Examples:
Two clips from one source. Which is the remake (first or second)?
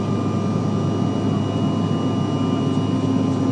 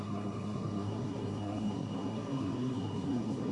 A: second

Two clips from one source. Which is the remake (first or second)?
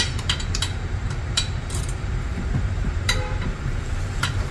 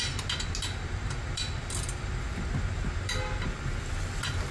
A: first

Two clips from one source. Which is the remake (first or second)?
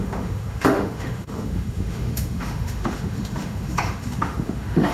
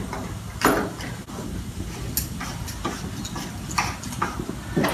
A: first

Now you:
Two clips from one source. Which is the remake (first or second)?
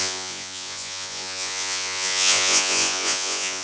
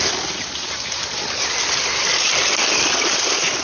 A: first